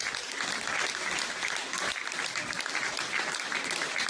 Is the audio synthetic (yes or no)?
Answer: no